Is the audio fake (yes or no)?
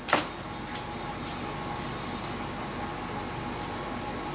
no